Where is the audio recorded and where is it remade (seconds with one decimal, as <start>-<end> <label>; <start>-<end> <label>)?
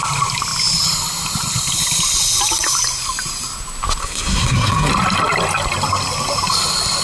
0.0-4.0 recorded; 4.0-4.9 remade; 4.9-7.0 recorded